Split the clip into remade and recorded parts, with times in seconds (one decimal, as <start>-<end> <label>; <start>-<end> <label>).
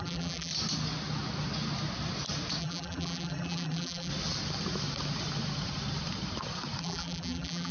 0.0-0.5 remade; 0.5-2.6 recorded; 2.6-4.1 remade; 4.1-6.8 recorded; 6.8-7.7 remade